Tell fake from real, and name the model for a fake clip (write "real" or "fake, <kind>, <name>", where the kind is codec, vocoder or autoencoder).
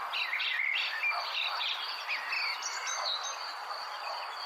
real